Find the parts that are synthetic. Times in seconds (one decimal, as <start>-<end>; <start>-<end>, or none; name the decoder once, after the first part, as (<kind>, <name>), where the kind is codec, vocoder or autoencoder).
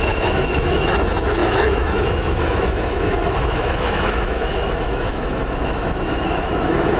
0.0-7.0 (autoencoder, DAC-VAE)